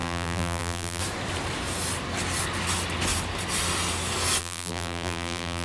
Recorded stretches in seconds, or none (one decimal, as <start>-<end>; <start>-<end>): 1.0-4.4